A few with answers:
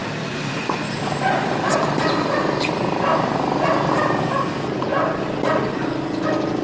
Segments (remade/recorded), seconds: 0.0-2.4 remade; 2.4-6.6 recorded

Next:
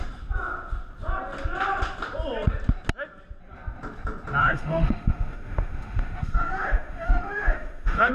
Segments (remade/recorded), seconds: 0.0-4.4 recorded; 4.4-8.1 remade

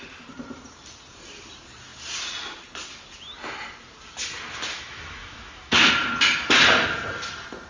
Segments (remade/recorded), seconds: 0.0-4.7 recorded; 4.7-5.9 remade; 5.9-7.7 recorded

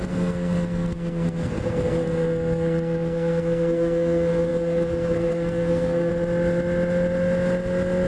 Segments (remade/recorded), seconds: 0.0-6.1 remade; 6.1-8.1 recorded

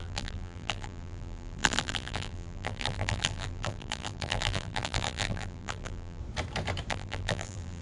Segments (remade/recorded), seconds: 0.0-6.2 remade; 6.2-6.9 recorded; 6.9-7.8 remade